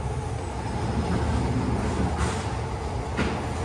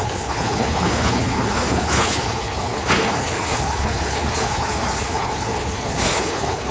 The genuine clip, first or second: first